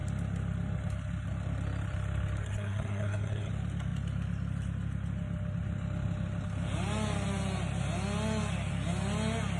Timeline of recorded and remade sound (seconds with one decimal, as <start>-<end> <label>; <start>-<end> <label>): 0.0-2.4 recorded; 2.4-3.5 remade; 3.5-9.6 recorded